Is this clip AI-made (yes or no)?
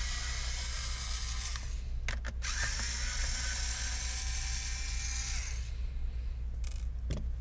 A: no